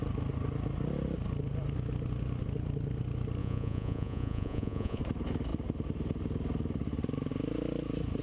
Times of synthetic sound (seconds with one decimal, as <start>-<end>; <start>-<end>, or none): 3.4-5.0